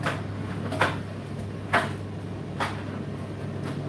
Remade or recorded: recorded